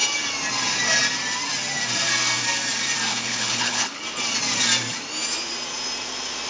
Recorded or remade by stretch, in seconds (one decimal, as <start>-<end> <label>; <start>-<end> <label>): 0.0-3.1 recorded; 3.1-4.0 remade; 4.0-6.5 recorded